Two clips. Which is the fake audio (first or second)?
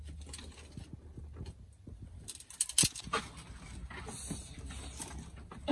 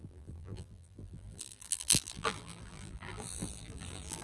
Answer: second